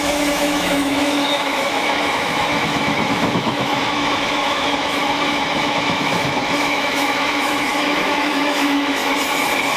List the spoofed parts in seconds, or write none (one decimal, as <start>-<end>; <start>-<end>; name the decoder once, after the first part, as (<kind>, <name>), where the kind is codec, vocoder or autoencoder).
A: 0.0-9.0 (autoencoder, DAC-VAE)